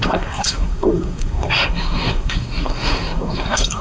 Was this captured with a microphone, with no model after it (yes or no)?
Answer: no